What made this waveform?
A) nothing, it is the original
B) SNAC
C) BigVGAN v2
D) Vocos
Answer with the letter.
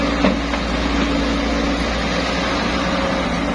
A